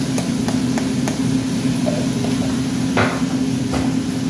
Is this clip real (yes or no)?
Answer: yes